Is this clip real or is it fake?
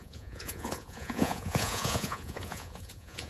fake